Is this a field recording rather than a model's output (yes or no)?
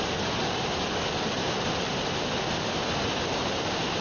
yes